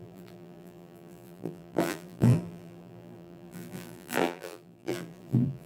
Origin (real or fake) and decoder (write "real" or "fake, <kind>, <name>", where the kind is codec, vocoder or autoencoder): fake, vocoder, BigVGAN v2